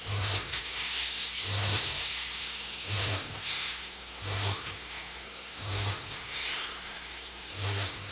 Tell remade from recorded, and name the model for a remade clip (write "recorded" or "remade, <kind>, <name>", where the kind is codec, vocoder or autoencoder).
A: remade, codec, SNAC